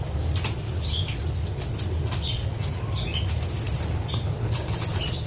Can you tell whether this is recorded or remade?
recorded